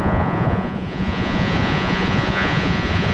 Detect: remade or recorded remade